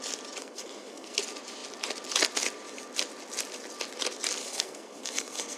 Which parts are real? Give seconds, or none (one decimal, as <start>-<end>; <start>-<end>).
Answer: 0.0-0.4; 1.2-4.4